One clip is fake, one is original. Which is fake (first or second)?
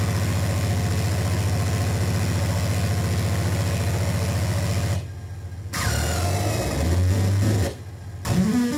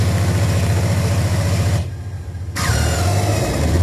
second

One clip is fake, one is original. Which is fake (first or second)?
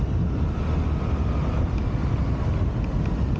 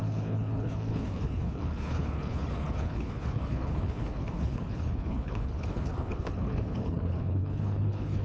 second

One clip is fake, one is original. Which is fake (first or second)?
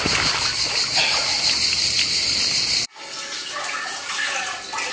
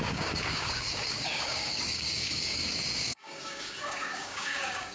second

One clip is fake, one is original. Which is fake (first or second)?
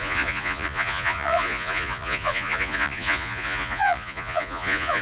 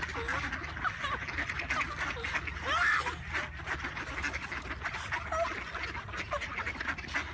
first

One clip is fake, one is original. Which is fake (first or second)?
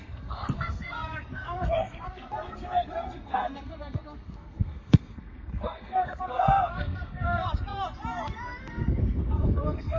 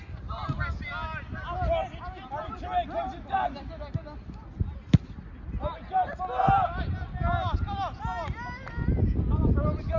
first